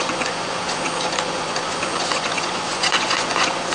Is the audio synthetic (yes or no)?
yes